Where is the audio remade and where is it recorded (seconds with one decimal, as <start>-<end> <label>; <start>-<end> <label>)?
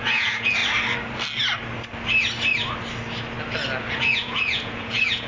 0.0-0.6 remade; 0.6-3.8 recorded; 3.8-5.3 remade